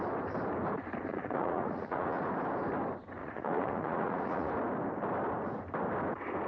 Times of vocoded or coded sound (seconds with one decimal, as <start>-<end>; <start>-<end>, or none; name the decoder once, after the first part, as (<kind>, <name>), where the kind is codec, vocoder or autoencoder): 1.1-2.2 (vocoder, Vocos); 3.2-4.5